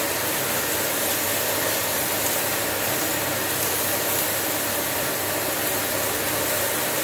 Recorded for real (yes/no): yes